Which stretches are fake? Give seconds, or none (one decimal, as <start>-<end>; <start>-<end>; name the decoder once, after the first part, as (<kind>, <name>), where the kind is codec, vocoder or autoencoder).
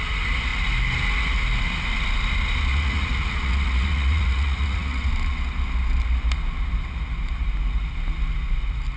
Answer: 2.7-5.1 (vocoder, Vocos)